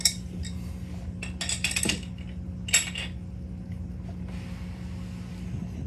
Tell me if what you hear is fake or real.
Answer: real